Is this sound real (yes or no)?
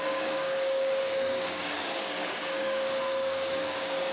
no